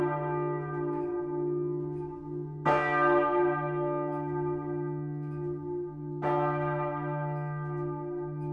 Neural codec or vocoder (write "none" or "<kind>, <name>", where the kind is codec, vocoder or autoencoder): none